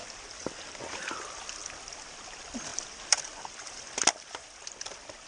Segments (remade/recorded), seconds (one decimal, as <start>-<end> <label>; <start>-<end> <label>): 0.0-0.8 remade; 0.8-2.7 recorded; 2.7-4.8 remade; 4.8-5.3 recorded